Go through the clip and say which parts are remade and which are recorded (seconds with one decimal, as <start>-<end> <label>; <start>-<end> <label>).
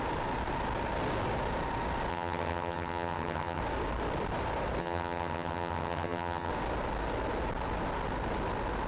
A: 0.0-2.1 recorded; 2.1-3.6 remade; 3.6-4.8 recorded; 4.8-6.5 remade; 6.5-8.9 recorded